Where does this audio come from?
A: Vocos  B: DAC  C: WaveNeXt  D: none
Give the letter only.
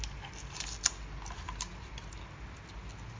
D